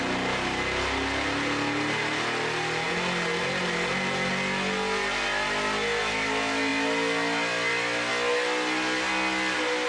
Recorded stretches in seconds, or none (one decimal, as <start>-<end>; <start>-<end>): 0.0-9.9